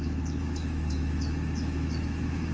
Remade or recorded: remade